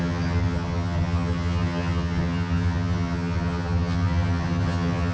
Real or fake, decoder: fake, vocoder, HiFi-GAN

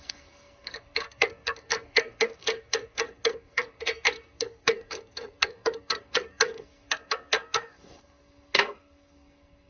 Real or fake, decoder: fake, codec, SNAC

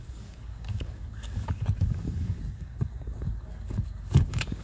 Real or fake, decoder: fake, codec, DAC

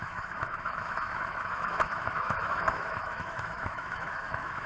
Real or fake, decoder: fake, autoencoder, DAC-VAE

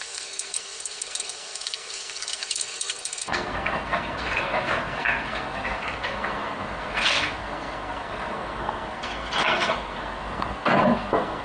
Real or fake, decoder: fake, codec, SNAC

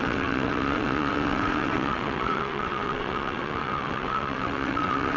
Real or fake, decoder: fake, vocoder, WaveNeXt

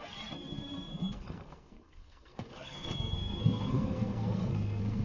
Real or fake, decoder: fake, codec, SNAC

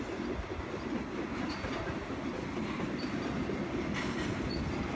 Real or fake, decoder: real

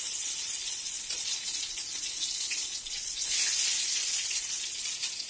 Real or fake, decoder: fake, vocoder, Vocos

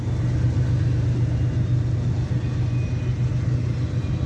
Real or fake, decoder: real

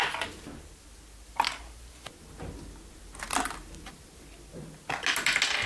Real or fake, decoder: real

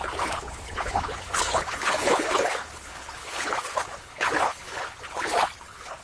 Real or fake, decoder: fake, codec, HILCodec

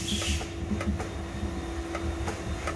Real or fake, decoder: real